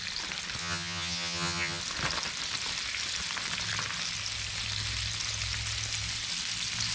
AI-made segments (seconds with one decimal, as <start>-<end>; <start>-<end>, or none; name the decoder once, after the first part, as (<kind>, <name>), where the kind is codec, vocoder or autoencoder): 0.6-1.8 (vocoder, HiFi-GAN)